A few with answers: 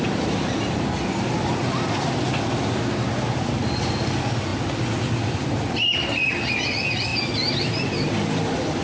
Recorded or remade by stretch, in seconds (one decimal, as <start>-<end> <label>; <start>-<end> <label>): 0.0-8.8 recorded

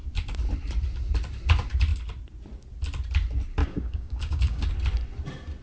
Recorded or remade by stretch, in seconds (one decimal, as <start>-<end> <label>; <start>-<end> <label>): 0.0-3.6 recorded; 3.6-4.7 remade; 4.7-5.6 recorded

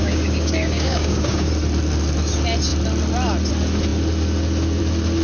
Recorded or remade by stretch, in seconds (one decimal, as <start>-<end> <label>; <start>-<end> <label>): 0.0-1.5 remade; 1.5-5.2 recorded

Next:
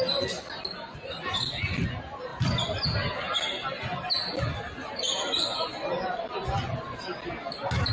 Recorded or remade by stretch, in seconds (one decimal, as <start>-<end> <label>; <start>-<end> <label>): 0.0-7.9 recorded